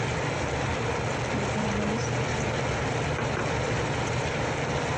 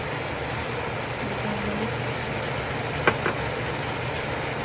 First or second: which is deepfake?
first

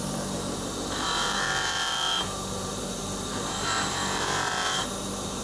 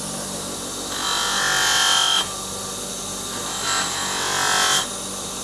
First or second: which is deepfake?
first